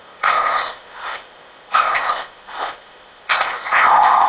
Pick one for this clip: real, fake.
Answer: fake